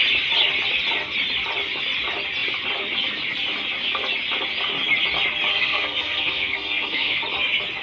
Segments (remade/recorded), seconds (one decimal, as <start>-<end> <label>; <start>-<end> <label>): 0.0-5.5 recorded; 5.5-7.2 remade; 7.2-7.8 recorded